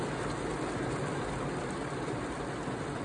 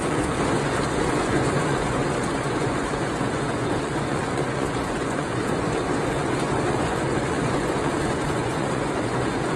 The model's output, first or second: second